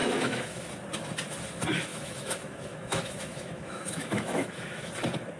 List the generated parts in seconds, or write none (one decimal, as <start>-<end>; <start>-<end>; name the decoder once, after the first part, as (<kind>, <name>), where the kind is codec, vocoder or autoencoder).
0.0-0.7 (autoencoder, DAC-VAE); 1.9-4.9